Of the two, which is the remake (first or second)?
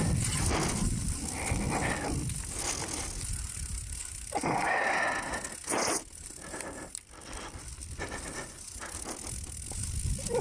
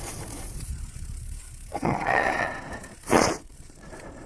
second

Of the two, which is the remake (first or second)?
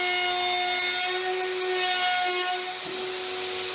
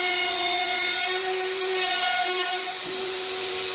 second